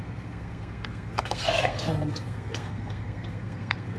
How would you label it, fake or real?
fake